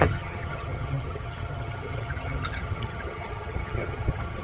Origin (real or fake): fake